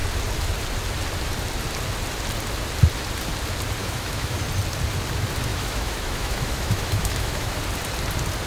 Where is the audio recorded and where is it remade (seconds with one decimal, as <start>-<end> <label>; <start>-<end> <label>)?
0.0-3.8 recorded; 3.8-4.4 remade; 4.4-5.5 recorded; 5.5-7.6 remade; 7.6-8.5 recorded